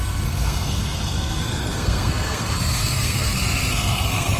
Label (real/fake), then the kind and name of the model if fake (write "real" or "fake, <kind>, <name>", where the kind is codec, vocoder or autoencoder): fake, codec, SNAC